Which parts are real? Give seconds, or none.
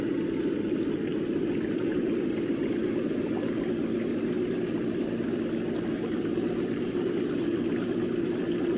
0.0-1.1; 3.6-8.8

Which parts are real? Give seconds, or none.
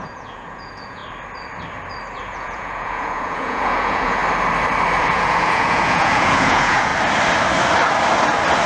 1.0-2.2; 4.2-5.0; 6.9-8.7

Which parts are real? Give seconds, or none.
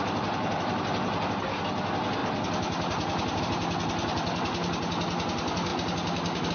0.0-6.5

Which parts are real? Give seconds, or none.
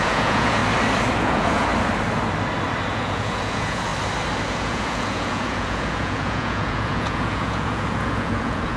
0.6-1.2; 1.7-2.9; 3.9-4.5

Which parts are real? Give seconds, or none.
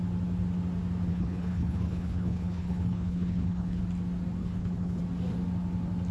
0.0-1.1; 3.8-4.4; 5.0-6.1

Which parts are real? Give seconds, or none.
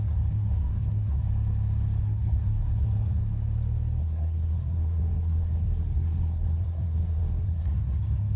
1.3-2.0; 3.2-4.0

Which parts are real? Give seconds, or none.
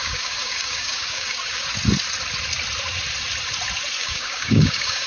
1.6-4.0